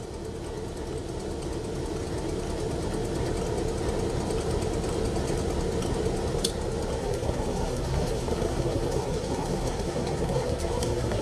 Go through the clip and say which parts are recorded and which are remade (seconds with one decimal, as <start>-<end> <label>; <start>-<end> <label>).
0.0-7.0 recorded; 7.0-11.2 remade